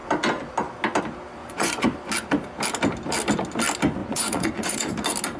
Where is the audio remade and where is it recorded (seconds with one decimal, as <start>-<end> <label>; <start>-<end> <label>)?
0.0-1.4 recorded; 1.4-2.0 remade; 2.0-4.0 recorded; 4.0-4.9 remade; 4.9-5.4 recorded